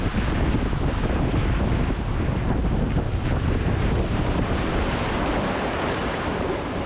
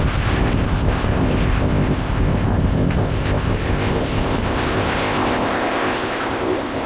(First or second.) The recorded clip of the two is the first